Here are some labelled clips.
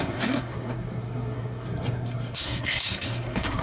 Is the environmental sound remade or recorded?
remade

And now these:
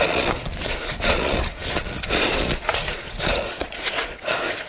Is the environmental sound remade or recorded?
remade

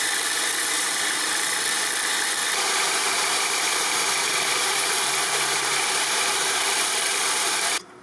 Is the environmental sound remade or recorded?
remade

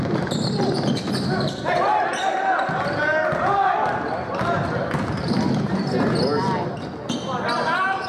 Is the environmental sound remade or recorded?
recorded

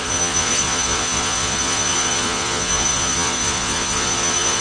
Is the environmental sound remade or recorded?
remade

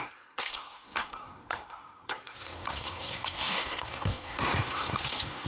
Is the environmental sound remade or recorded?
remade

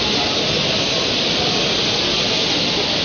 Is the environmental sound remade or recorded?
recorded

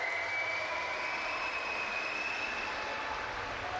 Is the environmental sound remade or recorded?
recorded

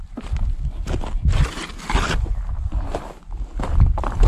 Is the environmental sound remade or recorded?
recorded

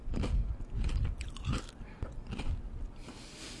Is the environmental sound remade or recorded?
recorded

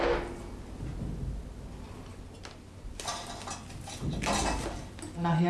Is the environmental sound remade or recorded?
recorded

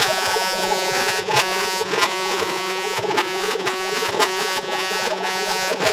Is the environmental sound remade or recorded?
remade